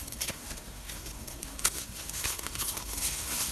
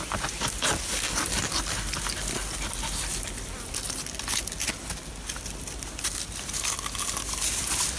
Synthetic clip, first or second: first